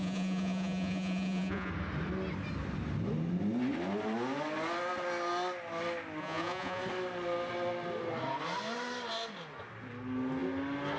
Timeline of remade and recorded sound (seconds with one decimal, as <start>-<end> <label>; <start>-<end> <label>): 0.0-1.7 remade; 1.7-6.2 recorded; 6.2-6.8 remade; 6.8-11.0 recorded